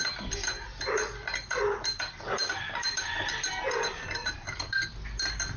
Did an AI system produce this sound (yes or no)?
no